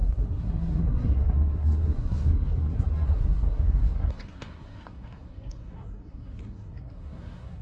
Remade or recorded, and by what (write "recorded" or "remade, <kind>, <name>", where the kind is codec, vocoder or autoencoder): remade, codec, SNAC